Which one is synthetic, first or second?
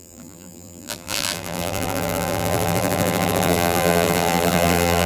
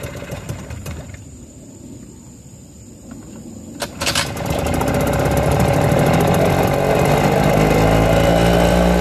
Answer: first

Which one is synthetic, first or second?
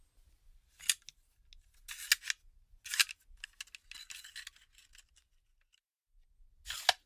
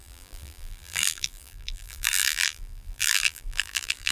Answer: second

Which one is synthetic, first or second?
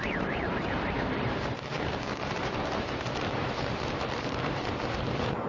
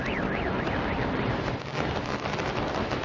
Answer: first